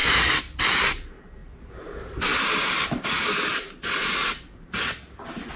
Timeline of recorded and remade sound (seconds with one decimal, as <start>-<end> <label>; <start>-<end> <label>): 0.0-0.6 remade; 0.6-1.4 recorded; 1.4-4.8 remade; 4.8-5.6 recorded